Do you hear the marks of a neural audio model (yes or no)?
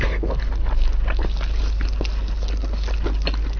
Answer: no